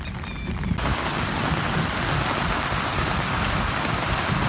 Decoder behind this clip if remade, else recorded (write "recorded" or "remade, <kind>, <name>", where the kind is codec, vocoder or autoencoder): recorded